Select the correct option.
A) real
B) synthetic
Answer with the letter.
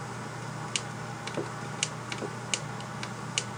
A